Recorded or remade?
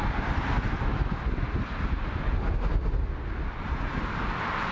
recorded